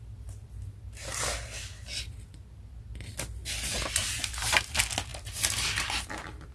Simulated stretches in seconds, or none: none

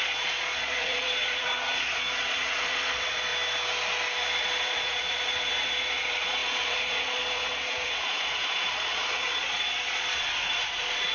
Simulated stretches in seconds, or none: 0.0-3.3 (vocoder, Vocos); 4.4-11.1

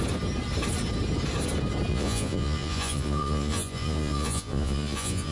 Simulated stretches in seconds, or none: 1.9-5.3 (vocoder, Vocos)